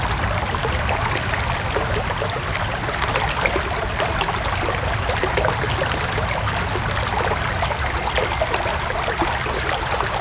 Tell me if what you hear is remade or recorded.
recorded